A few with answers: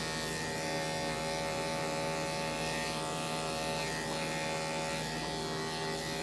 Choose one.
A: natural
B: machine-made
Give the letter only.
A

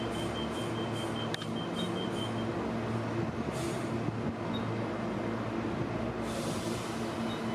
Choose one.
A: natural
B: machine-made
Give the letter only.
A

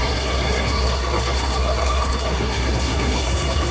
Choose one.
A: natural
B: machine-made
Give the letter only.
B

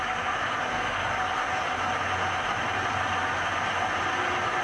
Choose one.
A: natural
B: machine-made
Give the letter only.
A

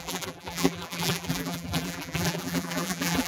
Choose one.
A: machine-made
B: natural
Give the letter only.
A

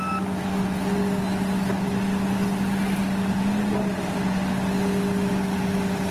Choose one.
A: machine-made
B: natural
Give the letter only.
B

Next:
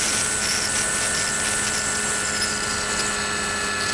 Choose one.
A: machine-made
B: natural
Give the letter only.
B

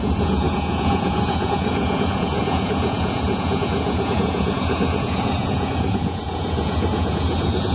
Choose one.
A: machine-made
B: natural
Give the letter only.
A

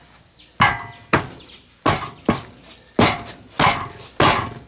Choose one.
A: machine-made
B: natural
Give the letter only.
B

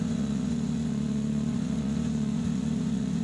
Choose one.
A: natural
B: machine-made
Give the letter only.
B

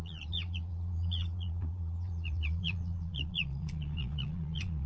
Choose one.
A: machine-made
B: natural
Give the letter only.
A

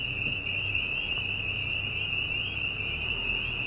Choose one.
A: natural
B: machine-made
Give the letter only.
A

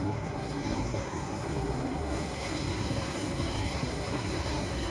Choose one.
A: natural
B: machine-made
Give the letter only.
B